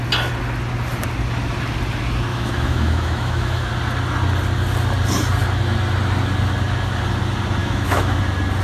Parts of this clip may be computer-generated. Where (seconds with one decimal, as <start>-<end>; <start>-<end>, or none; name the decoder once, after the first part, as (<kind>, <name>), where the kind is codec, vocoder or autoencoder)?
2.3-3.7 (autoencoder, DAC-VAE); 7.6-8.2